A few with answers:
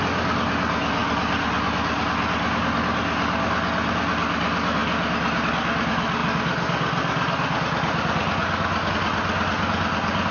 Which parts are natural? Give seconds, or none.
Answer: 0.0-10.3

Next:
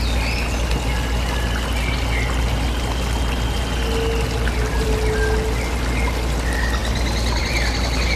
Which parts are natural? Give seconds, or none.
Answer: 0.0-8.2

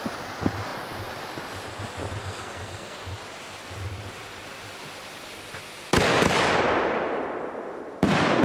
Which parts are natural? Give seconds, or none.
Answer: 0.0-2.2; 3.0-8.4

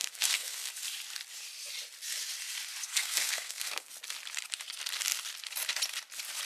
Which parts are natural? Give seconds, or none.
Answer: 0.7-2.9; 3.9-6.5

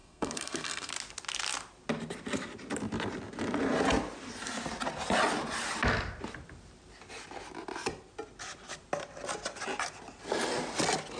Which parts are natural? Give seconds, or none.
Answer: 0.9-11.2

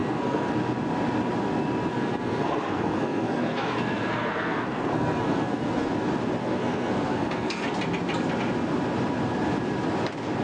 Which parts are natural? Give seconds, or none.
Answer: 0.5-1.9; 5.9-6.4; 7.6-10.4

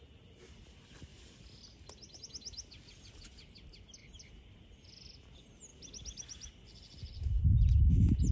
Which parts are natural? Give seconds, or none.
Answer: 0.0-8.3

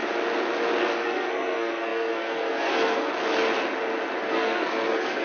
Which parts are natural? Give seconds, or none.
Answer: 0.0-1.0; 3.1-4.2